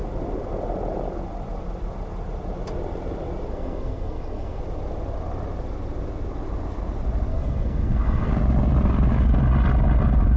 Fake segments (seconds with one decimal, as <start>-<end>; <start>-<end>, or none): 3.5-4.6; 7.3-8.3